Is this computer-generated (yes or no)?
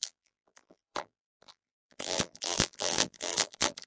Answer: yes